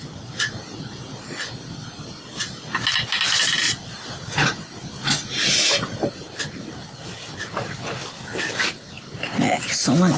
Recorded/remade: recorded